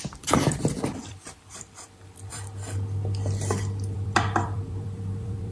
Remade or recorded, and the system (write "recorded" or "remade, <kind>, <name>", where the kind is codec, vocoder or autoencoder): remade, vocoder, BigVGAN v2